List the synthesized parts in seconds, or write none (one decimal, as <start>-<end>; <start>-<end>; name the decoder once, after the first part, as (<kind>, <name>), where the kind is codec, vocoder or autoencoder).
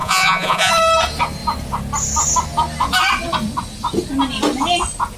0.0-0.7 (vocoder, Vocos)